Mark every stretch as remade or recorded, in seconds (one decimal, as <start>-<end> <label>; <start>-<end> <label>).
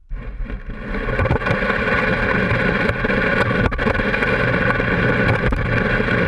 0.0-6.3 recorded